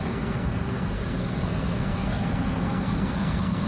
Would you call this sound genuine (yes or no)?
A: no